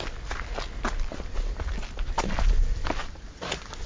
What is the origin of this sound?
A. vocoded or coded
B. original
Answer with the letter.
B